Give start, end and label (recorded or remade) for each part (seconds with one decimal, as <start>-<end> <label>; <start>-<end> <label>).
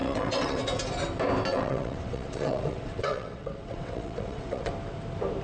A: 0.0-0.6 remade; 0.6-1.5 recorded; 1.5-4.7 remade; 4.7-5.4 recorded